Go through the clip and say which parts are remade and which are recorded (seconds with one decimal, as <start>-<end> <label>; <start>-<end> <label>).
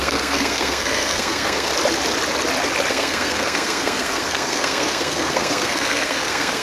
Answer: 0.0-1.7 remade; 1.7-2.9 recorded; 2.9-6.6 remade